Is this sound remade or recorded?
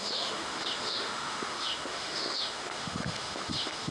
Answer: remade